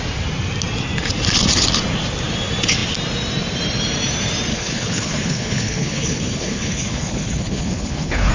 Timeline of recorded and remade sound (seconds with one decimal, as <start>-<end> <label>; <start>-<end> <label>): 0.0-4.5 recorded; 4.5-8.3 remade